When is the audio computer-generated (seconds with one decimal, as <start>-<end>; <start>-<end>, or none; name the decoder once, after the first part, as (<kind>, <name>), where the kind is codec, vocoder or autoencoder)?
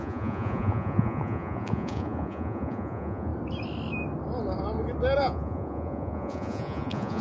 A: 0.0-3.3 (vocoder, Vocos); 5.2-7.2